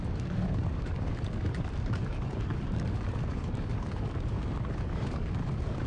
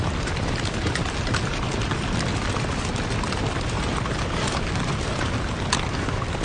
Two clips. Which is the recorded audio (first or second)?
second